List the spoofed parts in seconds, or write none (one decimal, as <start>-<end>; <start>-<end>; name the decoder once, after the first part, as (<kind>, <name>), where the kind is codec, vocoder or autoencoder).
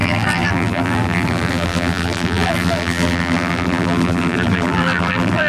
0.0-5.5 (vocoder, BigVGAN v2)